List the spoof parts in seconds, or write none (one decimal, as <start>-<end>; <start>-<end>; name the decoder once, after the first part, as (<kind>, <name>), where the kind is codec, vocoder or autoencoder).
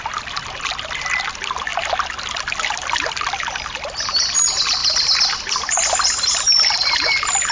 none